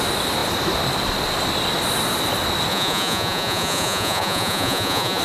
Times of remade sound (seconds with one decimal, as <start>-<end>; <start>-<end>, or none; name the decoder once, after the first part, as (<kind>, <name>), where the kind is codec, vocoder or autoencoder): 2.7-5.2 (vocoder, Vocos)